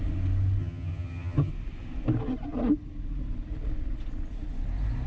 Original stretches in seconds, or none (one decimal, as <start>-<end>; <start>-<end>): 0.0-0.6; 1.5-5.1